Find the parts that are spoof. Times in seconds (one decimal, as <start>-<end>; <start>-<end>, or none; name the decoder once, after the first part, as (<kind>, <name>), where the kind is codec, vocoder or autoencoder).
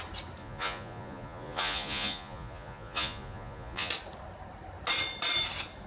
0.4-3.9 (vocoder, Vocos)